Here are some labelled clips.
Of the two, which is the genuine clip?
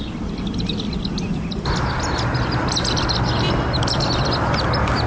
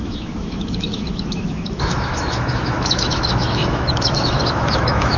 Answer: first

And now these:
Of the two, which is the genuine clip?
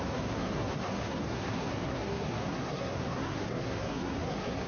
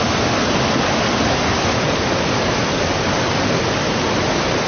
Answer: second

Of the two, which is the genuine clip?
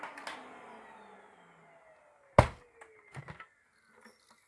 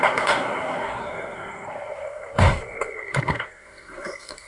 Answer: first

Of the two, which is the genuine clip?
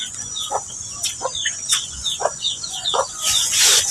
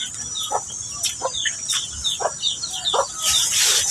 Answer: second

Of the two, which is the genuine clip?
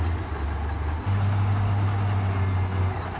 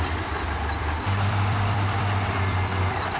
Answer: first